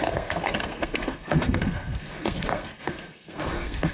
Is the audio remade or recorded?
remade